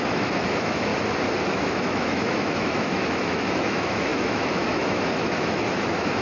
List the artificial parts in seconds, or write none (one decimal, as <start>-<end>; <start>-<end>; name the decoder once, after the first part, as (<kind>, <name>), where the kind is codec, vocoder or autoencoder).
0.0-0.9 (autoencoder, DAC-VAE); 1.4-6.2